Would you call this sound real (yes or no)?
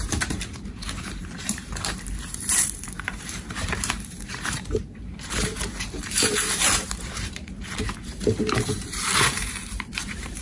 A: no